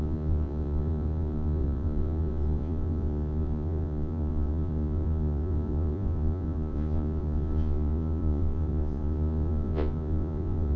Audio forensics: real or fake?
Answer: fake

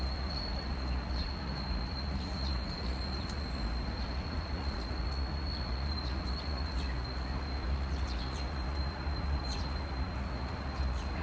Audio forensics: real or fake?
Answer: fake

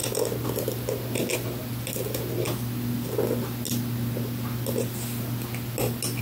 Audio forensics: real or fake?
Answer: real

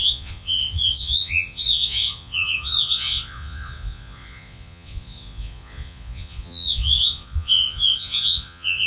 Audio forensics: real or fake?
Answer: fake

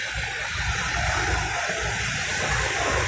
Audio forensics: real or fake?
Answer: real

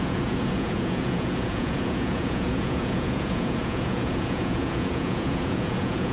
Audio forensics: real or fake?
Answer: fake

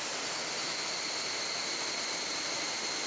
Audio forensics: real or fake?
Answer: real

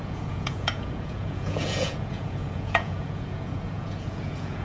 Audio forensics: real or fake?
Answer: fake